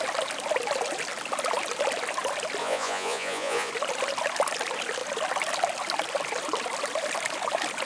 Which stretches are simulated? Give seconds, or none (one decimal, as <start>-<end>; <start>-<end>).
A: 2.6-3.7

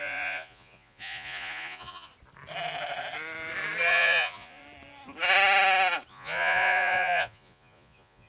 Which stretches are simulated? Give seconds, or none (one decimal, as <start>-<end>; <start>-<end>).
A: 0.0-2.1; 3.9-4.6; 6.1-8.3

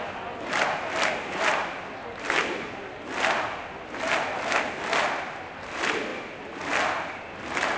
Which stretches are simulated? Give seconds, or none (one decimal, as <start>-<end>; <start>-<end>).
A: none